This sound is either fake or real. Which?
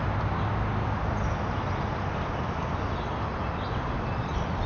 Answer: real